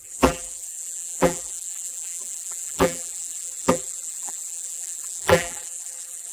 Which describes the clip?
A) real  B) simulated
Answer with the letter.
B